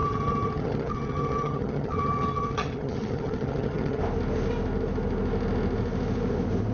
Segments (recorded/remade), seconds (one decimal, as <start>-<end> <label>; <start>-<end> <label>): 0.0-4.0 remade; 4.0-6.7 recorded